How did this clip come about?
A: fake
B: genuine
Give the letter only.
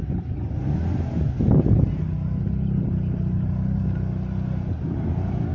B